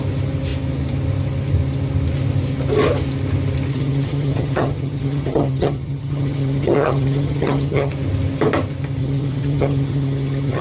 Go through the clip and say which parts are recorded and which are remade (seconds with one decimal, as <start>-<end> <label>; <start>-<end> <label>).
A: 0.0-3.7 recorded; 3.7-7.9 remade; 7.9-9.0 recorded; 9.0-10.6 remade